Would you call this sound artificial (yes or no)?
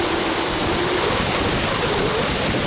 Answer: no